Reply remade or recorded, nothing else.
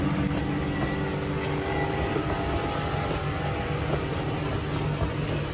recorded